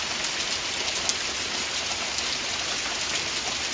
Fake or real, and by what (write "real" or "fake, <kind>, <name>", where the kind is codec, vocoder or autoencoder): real